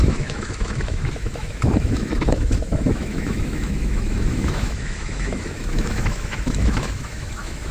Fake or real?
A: fake